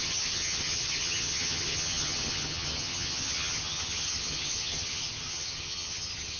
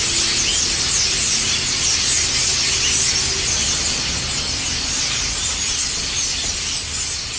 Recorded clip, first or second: second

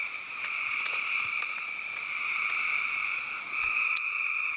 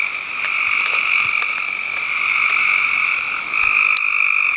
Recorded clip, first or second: second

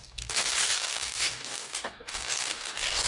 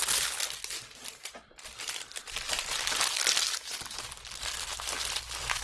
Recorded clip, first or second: second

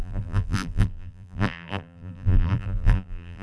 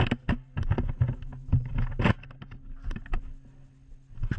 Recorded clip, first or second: second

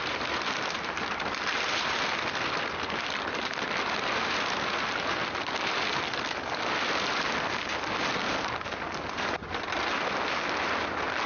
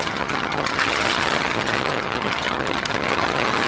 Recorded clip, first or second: first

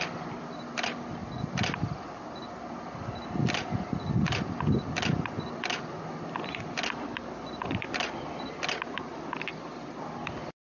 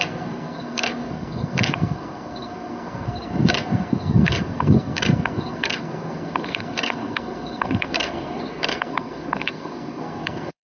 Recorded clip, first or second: first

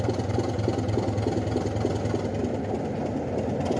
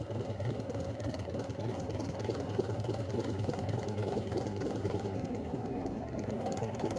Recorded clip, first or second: first